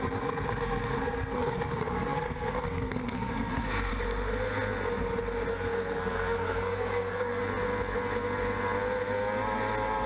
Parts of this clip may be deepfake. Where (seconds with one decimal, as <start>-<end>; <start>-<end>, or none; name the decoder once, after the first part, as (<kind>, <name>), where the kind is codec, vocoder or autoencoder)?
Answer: 0.0-3.9 (codec, SNAC); 5.5-7.4